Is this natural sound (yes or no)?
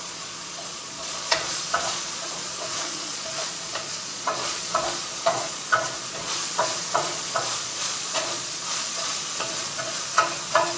no